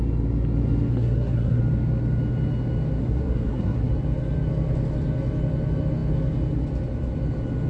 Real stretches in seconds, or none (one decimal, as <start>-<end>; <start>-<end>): 0.0-0.9; 1.6-3.0; 3.9-7.7